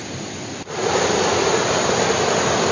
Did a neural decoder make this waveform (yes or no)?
no